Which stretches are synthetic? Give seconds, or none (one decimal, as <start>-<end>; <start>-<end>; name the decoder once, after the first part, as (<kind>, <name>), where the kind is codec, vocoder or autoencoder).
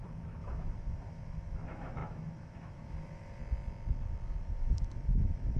0.0-3.4 (autoencoder, DAC-VAE); 4.4-5.6